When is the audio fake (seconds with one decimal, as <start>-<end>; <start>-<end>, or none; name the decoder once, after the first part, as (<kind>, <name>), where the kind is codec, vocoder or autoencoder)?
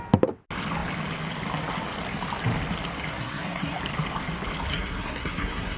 3.1-3.8 (codec, SNAC); 4.7-5.8